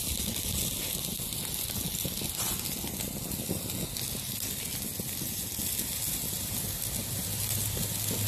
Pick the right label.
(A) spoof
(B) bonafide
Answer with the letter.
B